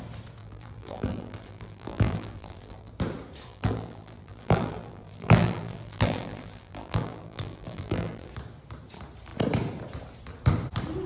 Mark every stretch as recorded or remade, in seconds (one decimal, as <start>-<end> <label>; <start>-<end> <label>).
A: 0.0-0.4 recorded; 0.4-2.9 remade; 2.9-3.5 recorded; 3.5-8.3 remade; 8.3-11.1 recorded